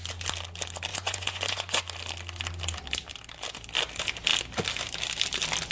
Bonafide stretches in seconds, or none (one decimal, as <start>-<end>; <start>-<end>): 0.0-0.9; 1.8-5.7

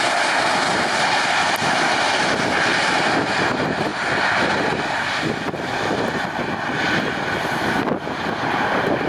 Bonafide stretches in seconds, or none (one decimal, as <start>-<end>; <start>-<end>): 0.0-9.1

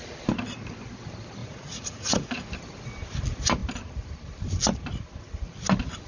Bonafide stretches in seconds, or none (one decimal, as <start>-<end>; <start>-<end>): 0.0-1.4; 2.5-6.1

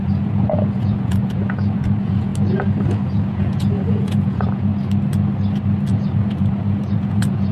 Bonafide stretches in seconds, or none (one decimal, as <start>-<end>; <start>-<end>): 2.3-2.9; 4.7-5.9

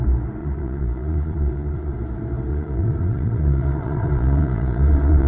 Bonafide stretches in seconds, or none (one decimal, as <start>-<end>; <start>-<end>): 0.0-0.4; 1.9-2.5